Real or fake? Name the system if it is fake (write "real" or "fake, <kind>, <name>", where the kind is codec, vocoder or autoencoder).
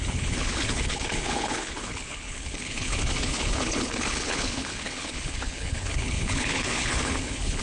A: fake, codec, HILCodec